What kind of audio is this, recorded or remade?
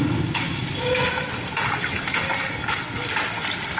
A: recorded